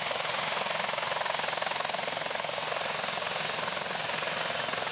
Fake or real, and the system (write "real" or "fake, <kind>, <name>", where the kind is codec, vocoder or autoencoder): real